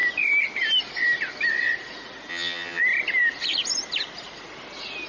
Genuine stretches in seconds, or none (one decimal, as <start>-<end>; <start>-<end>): 0.0-2.3; 2.8-5.1